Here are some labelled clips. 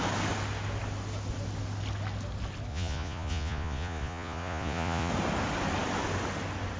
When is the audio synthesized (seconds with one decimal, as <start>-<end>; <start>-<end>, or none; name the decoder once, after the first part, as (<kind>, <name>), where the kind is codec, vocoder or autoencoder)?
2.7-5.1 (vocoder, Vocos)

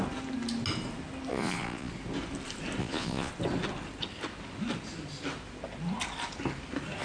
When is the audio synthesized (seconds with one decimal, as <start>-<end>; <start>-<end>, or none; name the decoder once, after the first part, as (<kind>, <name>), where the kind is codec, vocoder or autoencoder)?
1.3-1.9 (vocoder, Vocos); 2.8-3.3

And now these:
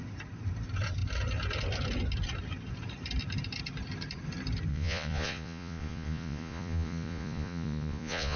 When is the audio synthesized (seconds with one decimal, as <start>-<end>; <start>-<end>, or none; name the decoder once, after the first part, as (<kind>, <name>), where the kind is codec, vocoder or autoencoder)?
4.7-8.4 (vocoder, Vocos)